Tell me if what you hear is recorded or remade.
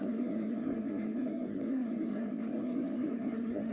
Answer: remade